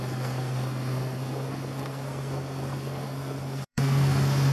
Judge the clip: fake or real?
fake